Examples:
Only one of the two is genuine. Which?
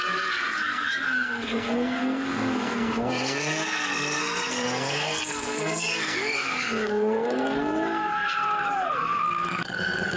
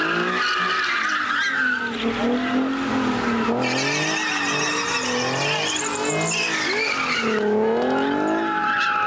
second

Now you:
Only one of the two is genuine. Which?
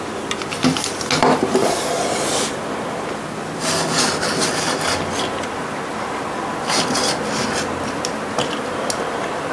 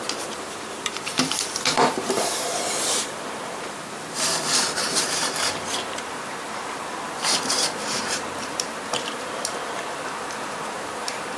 first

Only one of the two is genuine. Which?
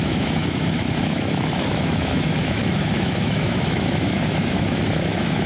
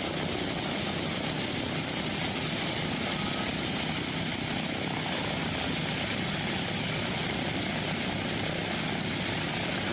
second